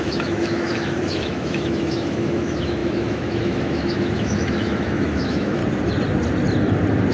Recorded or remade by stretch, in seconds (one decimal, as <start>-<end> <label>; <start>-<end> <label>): 0.0-5.6 remade; 5.6-7.1 recorded